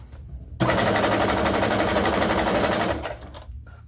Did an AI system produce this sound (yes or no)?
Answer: no